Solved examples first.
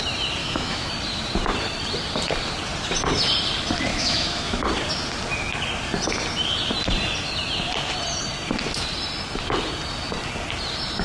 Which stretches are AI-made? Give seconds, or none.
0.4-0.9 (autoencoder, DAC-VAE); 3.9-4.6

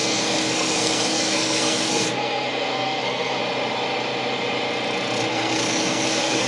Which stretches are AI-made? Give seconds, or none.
0.0-3.4 (codec, SNAC); 5.3-6.5

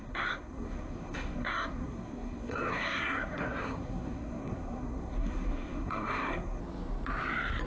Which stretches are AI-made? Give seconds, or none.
0.0-6.6 (codec, SNAC)

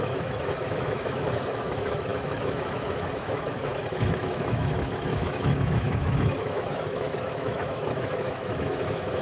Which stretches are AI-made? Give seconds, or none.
0.0-9.2 (autoencoder, DAC-VAE)

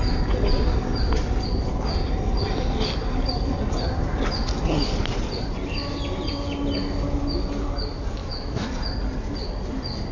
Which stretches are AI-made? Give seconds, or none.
8.2-8.7 (autoencoder, DAC-VAE)

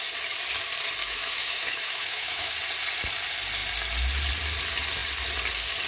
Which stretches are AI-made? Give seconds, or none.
1.0-2.5 (autoencoder, DAC-VAE)

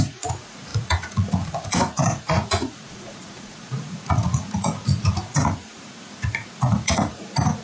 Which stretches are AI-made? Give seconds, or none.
0.0-7.6 (vocoder, Vocos)